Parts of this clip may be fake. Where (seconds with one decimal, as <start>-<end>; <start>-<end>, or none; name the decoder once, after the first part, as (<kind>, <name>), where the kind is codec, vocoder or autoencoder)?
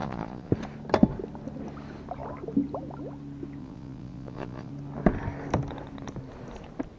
0.0-0.5 (vocoder, Vocos); 3.6-4.7